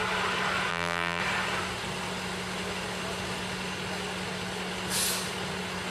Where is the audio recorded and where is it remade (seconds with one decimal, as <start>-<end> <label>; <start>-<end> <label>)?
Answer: 0.0-0.7 recorded; 0.7-1.2 remade; 1.2-5.9 recorded

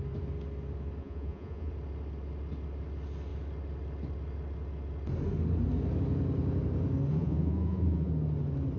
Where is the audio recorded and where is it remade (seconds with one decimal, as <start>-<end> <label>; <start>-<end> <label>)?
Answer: 0.0-1.0 recorded; 1.0-1.7 remade; 1.7-7.1 recorded; 7.1-8.1 remade; 8.1-8.8 recorded